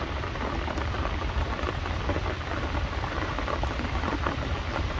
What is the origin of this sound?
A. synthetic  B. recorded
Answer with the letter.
B